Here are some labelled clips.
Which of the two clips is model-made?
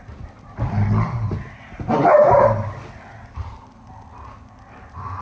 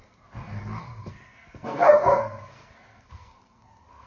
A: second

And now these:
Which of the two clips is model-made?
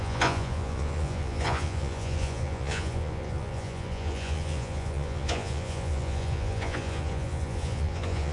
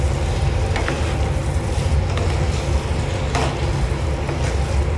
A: first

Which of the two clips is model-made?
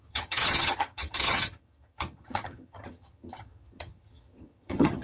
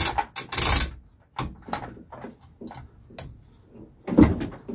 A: first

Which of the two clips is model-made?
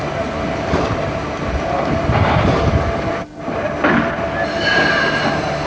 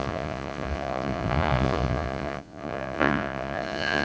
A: second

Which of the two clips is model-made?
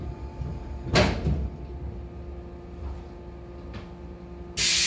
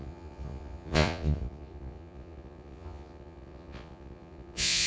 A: second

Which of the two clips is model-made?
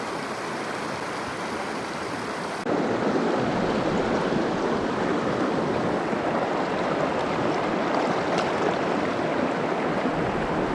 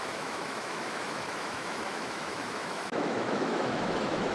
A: second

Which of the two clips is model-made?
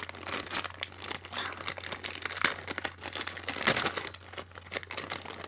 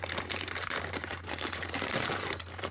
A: second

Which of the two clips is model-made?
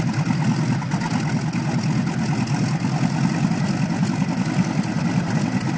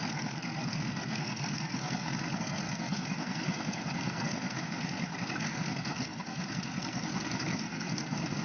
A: second